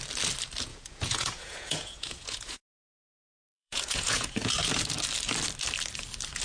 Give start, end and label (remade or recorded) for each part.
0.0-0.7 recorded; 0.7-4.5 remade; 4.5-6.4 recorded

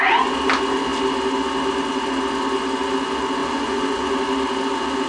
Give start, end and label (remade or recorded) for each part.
0.0-3.4 recorded; 3.4-4.1 remade; 4.1-5.1 recorded

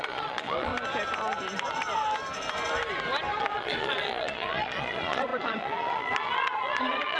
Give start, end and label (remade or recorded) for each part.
0.0-0.7 remade; 0.7-3.4 recorded; 3.4-7.2 remade

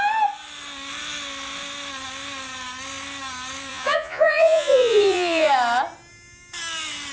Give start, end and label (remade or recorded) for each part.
0.0-3.7 recorded; 3.7-5.5 remade; 5.5-7.1 recorded

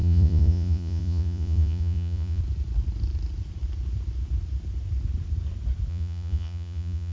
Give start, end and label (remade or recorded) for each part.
0.0-2.4 remade; 2.4-5.9 recorded; 5.9-7.1 remade